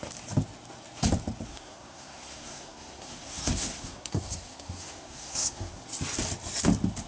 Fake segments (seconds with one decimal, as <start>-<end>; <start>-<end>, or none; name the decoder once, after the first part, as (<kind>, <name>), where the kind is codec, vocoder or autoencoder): 1.5-5.8 (codec, SNAC)